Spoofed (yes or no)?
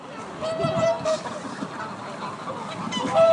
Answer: no